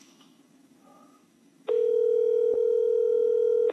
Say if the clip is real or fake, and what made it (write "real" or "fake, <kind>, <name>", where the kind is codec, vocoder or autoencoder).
fake, autoencoder, DAC-VAE